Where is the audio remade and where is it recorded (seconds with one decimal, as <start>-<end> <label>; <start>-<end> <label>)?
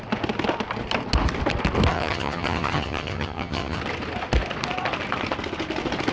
0.0-1.9 recorded; 1.9-3.8 remade; 3.8-6.1 recorded